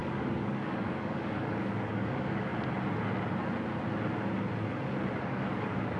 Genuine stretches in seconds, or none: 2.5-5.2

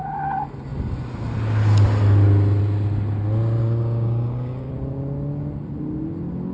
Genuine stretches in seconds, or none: 0.0-3.6; 4.7-6.5

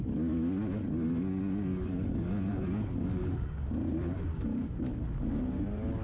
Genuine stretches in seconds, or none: 0.0-3.1; 4.8-6.0

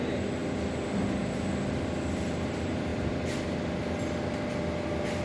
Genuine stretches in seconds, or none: 0.0-5.2